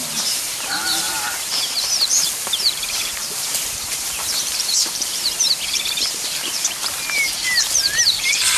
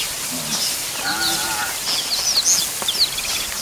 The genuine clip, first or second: second